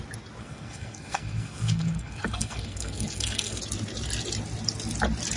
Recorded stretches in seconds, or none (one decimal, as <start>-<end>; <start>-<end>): 0.0-0.4; 3.6-5.4